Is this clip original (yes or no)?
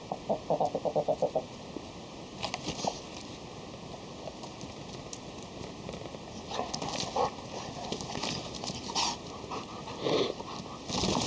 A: yes